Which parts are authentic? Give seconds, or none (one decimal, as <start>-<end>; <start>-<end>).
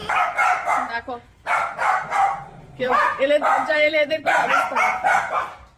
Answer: 0.0-3.1; 4.6-5.8